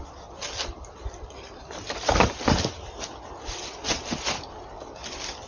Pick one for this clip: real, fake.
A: real